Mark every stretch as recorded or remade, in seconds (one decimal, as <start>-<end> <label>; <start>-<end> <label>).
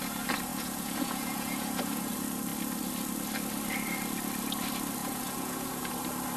0.0-0.5 recorded; 0.5-2.1 remade; 2.1-5.0 recorded; 5.0-5.9 remade; 5.9-6.4 recorded